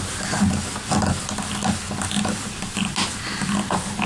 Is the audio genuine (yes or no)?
yes